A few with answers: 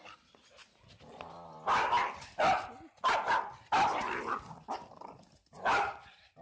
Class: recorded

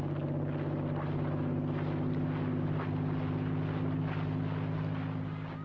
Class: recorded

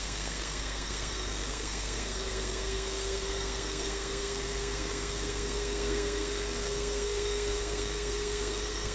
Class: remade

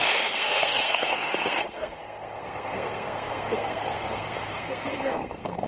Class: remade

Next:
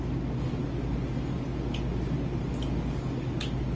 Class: recorded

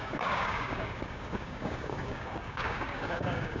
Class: remade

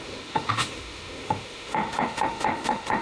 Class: remade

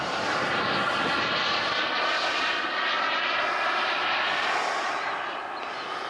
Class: recorded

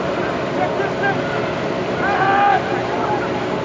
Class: recorded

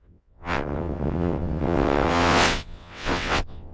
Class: remade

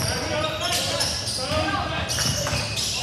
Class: recorded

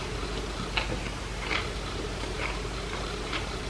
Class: remade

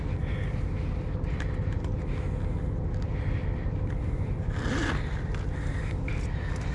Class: recorded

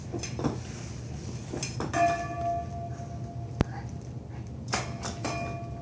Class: recorded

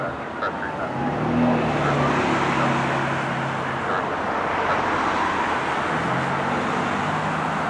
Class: recorded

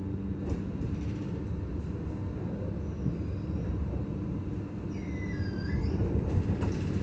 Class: recorded